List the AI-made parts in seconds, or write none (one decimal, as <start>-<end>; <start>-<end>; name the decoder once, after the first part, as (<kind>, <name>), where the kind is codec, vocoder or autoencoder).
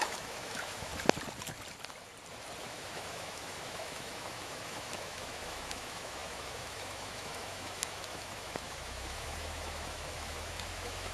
0.0-0.9 (autoencoder, DAC-VAE); 2.6-11.1